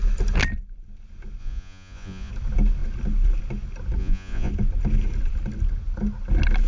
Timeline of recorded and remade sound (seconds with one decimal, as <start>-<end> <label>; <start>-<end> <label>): 0.0-1.4 recorded; 1.4-2.3 remade; 2.3-4.0 recorded; 4.0-4.5 remade; 4.5-6.7 recorded